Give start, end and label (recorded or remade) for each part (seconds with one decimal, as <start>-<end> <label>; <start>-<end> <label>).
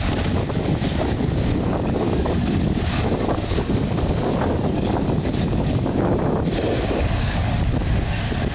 0.0-6.1 remade; 6.1-6.9 recorded; 6.9-8.5 remade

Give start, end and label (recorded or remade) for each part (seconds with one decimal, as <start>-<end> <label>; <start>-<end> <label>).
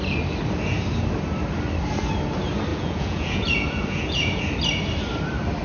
0.0-2.7 recorded; 2.7-4.4 remade; 4.4-5.6 recorded